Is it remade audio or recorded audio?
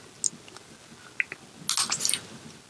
recorded